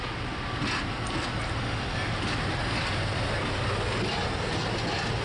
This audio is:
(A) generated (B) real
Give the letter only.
B